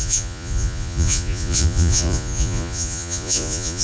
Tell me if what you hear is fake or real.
fake